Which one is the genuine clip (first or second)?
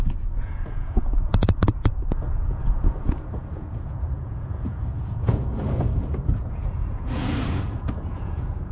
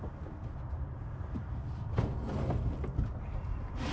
second